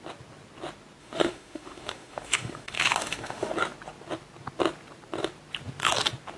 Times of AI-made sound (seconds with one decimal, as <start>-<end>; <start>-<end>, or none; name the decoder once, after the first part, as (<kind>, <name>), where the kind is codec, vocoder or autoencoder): 1.0-3.5 (autoencoder, DAC-VAE)